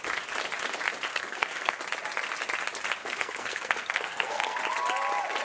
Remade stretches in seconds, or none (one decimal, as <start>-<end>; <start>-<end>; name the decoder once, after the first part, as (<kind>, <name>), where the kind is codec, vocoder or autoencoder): 1.1-1.8 (codec, SNAC); 3.0-4.6